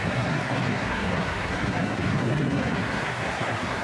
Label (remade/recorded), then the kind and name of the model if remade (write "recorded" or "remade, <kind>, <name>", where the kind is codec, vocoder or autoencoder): remade, codec, SNAC